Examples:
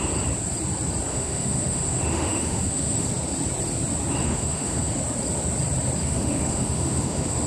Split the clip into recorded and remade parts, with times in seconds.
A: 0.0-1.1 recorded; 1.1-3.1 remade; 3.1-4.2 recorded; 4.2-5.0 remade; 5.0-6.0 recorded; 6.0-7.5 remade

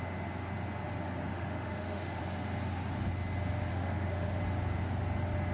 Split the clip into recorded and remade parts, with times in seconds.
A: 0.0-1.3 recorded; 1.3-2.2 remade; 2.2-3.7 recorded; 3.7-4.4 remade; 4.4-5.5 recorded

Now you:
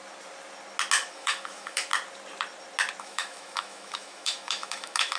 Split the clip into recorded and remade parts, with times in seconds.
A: 0.0-1.1 recorded; 1.1-1.9 remade; 1.9-3.0 recorded; 3.0-5.2 remade

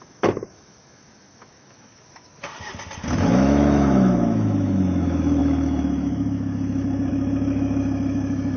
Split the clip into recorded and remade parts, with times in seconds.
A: 0.0-2.3 remade; 2.3-3.1 recorded; 3.1-8.6 remade